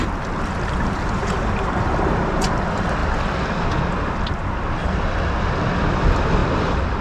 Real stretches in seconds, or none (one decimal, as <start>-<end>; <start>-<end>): 0.0-1.2; 2.2-7.0